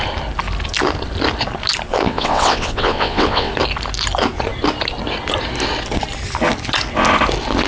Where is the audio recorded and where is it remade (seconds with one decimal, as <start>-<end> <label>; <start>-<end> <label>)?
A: 0.0-1.9 recorded; 1.9-3.5 remade; 3.5-7.7 recorded